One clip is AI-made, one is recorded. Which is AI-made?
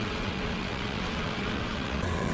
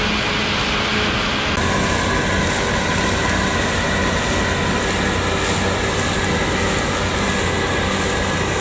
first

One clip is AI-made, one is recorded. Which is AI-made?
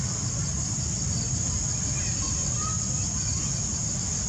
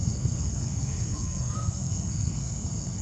second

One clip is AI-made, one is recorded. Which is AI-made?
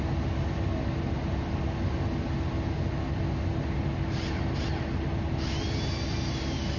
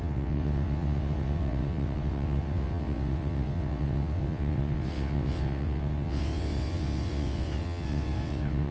second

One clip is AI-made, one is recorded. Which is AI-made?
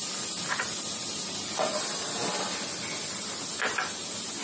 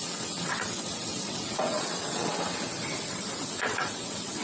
second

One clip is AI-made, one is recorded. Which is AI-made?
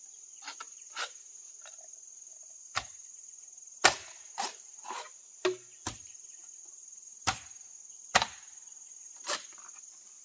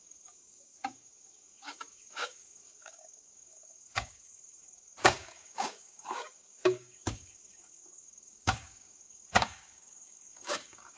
second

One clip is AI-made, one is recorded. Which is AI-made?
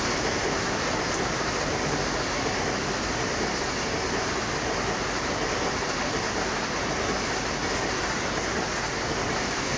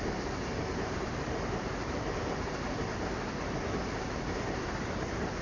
second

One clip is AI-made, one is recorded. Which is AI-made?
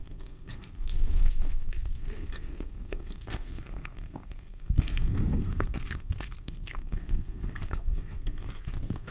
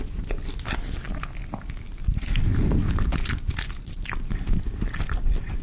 first